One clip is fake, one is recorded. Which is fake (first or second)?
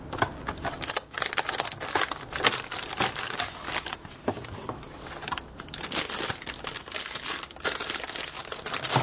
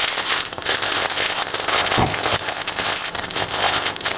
second